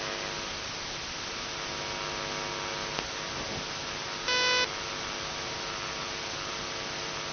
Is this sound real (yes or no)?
yes